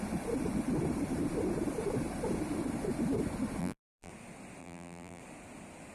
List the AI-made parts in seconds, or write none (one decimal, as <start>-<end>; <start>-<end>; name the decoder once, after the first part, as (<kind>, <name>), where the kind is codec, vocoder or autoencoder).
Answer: 3.6-4.1 (vocoder, BigVGAN v2); 4.6-5.2